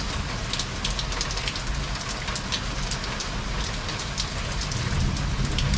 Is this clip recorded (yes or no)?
yes